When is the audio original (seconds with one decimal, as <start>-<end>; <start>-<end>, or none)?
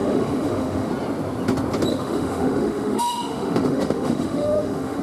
0.9-1.9